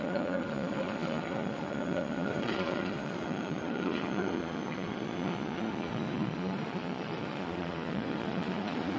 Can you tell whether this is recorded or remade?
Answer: remade